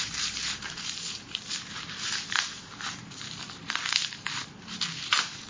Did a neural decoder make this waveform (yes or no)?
yes